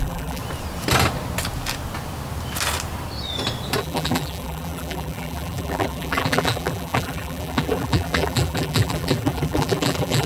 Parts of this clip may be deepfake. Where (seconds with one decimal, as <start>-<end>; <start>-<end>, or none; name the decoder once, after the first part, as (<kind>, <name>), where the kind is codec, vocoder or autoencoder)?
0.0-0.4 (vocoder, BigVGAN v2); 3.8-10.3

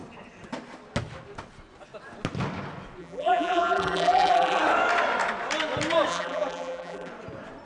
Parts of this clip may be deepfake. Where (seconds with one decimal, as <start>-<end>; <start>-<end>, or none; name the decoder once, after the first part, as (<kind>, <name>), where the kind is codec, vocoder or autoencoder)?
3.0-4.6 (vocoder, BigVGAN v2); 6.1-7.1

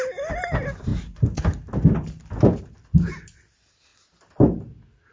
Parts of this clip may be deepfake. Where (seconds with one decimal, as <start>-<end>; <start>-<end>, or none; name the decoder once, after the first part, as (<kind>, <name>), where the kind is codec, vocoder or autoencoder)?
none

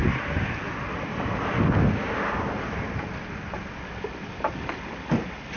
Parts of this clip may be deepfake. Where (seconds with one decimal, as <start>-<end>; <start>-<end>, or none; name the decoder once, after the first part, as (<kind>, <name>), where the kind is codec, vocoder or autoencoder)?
none